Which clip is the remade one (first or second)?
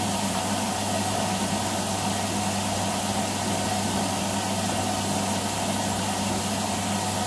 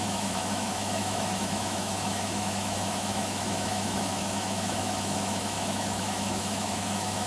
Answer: second